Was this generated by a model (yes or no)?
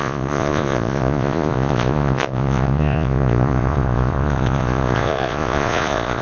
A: yes